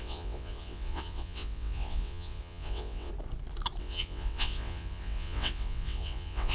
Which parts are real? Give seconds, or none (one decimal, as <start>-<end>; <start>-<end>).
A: 3.1-3.8

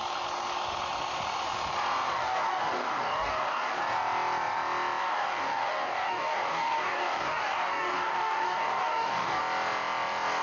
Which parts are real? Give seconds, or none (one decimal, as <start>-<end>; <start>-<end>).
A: 0.0-2.1; 3.8-5.0; 9.4-10.4